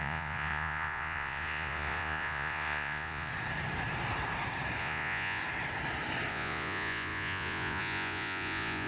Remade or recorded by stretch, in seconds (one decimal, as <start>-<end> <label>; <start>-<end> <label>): 0.0-3.3 remade; 3.3-4.8 recorded; 4.8-5.4 remade; 5.4-6.3 recorded; 6.3-8.9 remade